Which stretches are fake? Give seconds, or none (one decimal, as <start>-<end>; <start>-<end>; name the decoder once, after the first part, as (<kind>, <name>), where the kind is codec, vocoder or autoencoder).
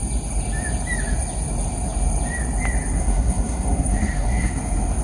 3.0-4.6 (codec, SNAC)